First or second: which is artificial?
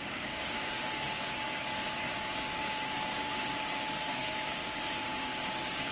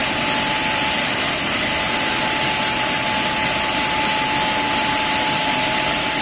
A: first